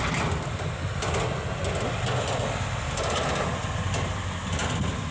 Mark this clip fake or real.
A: real